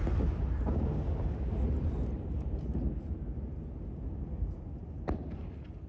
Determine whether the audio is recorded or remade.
recorded